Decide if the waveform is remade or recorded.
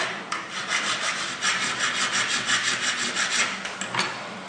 recorded